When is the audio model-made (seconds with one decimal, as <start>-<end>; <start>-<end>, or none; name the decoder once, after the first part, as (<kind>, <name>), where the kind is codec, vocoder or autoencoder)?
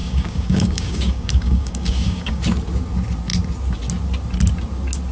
0.0-2.4 (codec, DAC)